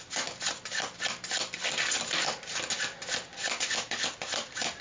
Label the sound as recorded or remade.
recorded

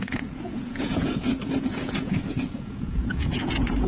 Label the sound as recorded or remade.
remade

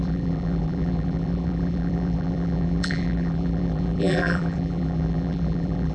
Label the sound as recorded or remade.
remade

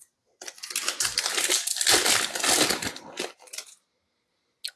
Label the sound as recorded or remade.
recorded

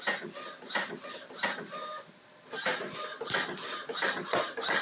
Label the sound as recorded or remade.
recorded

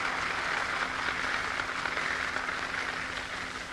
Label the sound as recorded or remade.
recorded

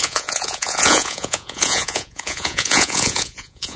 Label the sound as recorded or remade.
remade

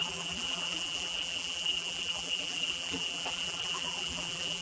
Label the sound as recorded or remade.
remade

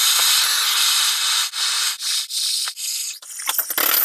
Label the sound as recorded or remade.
recorded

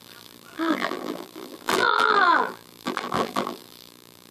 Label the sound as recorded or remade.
remade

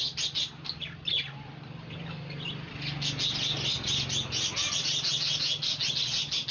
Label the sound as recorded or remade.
recorded